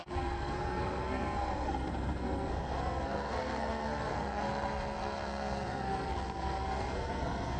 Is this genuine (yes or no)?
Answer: no